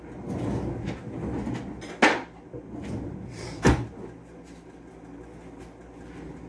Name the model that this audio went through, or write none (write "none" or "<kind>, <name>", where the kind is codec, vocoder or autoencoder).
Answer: none